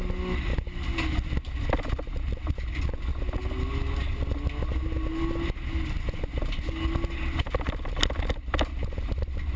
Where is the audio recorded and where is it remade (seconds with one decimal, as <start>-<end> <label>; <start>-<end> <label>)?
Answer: 0.0-9.6 recorded